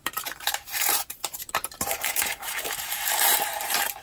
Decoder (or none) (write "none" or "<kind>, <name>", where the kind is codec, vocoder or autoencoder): vocoder, BigVGAN v2